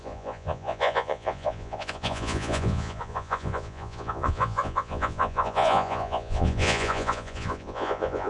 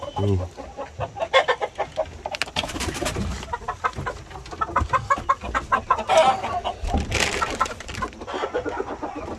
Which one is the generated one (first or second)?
first